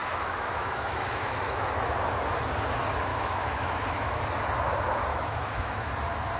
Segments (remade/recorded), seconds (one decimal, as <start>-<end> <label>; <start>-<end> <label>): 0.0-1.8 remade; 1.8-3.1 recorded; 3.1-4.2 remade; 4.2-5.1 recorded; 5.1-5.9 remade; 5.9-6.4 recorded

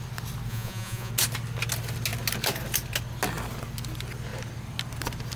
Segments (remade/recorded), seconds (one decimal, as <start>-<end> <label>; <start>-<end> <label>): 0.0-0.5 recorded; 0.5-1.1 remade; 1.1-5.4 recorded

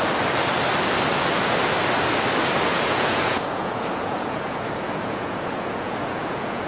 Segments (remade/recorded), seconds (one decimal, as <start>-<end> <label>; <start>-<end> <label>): 0.0-2.7 recorded; 2.7-6.7 remade